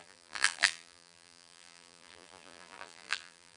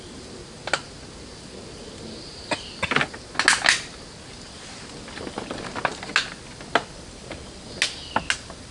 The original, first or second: second